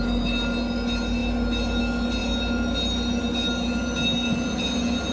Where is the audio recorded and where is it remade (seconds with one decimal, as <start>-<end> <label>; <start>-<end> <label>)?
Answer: 0.0-5.1 recorded